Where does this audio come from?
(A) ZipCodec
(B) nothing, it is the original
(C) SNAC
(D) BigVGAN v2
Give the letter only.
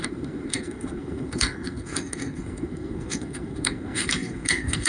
C